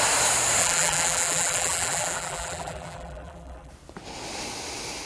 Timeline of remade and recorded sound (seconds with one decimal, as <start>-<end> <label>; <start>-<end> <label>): 0.0-0.6 recorded; 0.6-3.7 remade; 3.7-5.1 recorded